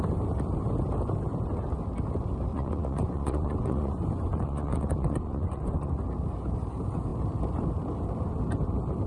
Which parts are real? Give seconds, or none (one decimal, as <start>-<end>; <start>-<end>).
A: 0.0-2.5; 5.9-9.1